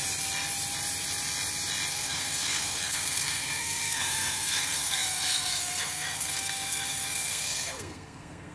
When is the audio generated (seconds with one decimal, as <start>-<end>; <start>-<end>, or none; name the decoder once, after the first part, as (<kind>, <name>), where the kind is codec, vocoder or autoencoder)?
1.9-8.5 (codec, SNAC)